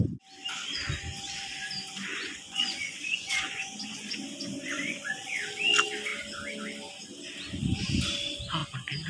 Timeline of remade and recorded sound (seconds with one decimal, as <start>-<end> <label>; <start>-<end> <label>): 0.0-2.1 recorded; 2.1-5.3 remade; 5.3-9.1 recorded